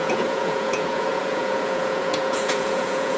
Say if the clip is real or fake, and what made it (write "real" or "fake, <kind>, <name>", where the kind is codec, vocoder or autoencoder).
fake, vocoder, Vocos